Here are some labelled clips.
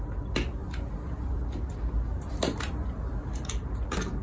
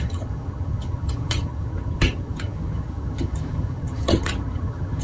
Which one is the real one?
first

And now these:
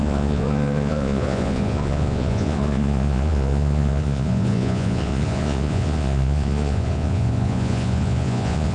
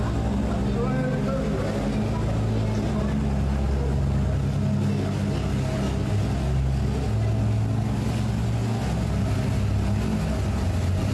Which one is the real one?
second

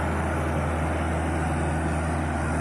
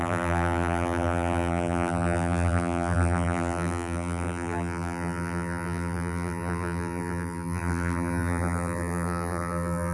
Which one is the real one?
first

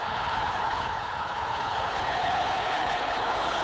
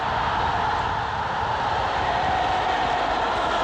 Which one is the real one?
second